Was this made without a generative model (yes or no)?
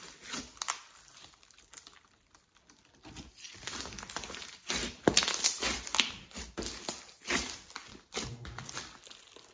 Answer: yes